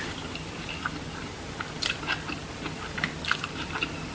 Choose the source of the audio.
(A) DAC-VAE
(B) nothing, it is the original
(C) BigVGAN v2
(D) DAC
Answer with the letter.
B